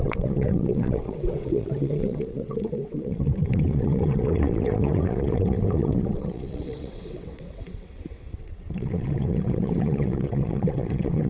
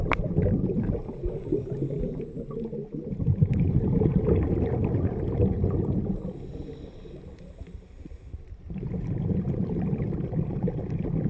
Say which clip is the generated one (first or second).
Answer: first